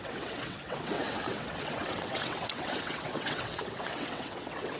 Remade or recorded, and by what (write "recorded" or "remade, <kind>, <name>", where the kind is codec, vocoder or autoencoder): remade, vocoder, WaveNeXt